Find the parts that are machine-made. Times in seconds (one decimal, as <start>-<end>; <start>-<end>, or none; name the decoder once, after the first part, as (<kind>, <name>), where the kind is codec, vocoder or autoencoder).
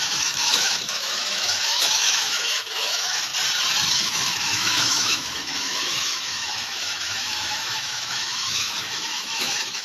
0.0-3.3 (autoencoder, DAC-VAE); 3.9-9.8